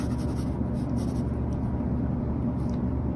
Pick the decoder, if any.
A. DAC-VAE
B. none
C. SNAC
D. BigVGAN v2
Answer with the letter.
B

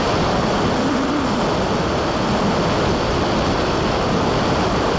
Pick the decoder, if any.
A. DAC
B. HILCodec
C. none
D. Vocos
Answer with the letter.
C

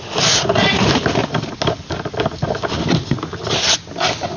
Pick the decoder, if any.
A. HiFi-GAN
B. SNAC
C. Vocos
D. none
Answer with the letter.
D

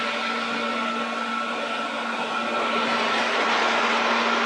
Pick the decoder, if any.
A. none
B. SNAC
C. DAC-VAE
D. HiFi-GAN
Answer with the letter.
A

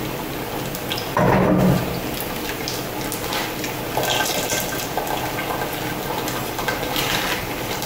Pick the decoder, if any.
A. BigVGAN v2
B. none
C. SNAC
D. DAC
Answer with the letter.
B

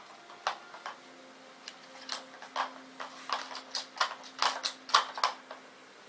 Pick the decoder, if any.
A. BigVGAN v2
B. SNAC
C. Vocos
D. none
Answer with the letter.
D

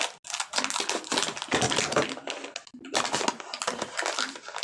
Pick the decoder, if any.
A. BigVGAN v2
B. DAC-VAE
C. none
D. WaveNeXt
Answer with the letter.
C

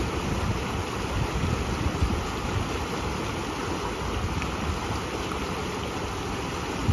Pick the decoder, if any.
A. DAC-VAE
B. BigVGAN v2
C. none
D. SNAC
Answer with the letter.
C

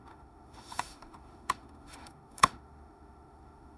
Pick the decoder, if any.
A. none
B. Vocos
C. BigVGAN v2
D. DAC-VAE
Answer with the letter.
D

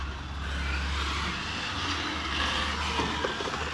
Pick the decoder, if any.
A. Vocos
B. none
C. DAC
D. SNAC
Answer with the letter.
B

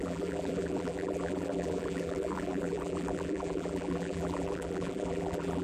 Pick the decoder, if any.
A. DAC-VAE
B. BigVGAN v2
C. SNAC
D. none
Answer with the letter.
B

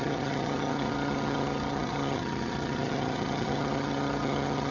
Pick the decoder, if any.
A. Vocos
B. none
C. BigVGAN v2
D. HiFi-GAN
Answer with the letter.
D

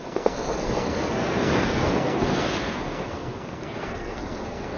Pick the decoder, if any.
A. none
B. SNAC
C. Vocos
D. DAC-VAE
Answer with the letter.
B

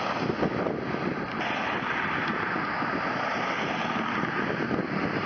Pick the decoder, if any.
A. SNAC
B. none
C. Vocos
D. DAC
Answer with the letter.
B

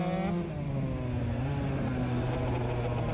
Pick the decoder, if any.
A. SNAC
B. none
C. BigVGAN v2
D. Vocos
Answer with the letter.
B